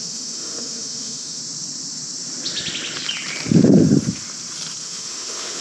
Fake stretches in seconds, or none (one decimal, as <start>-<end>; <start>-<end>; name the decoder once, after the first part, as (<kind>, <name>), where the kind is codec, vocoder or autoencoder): 0.0-1.4 (autoencoder, DAC-VAE); 4.8-5.6